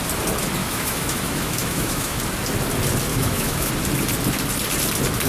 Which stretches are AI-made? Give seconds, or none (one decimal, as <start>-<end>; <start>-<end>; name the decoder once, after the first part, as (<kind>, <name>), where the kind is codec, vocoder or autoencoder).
0.6-2.2 (autoencoder, DAC-VAE); 3.1-3.7